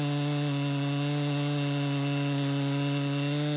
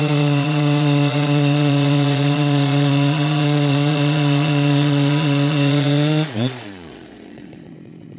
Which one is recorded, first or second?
first